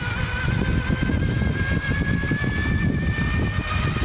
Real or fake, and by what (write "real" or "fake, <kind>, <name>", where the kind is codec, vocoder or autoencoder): real